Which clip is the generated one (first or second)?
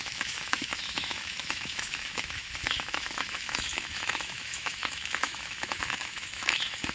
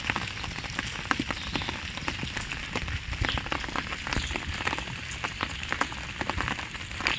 first